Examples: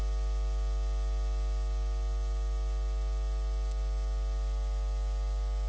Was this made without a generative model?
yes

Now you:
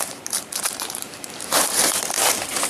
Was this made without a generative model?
no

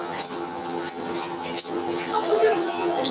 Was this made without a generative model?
no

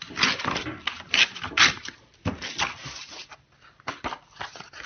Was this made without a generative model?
yes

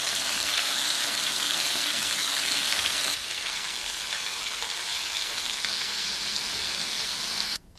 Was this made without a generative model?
no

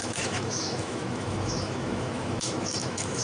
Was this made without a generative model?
no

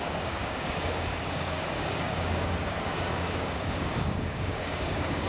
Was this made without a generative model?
no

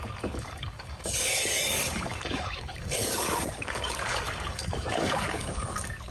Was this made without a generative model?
no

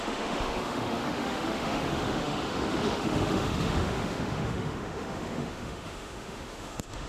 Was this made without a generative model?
no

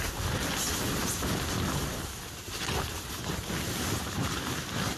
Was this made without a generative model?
yes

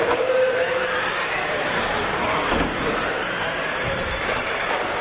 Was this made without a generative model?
no